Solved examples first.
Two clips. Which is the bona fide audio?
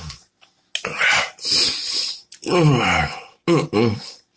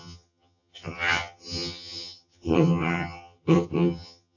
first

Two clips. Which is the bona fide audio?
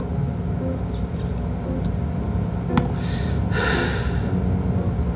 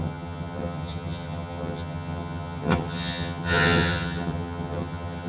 first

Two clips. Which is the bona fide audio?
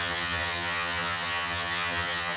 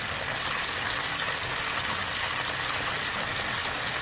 second